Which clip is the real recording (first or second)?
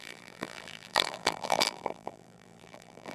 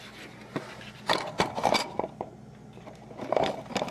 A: second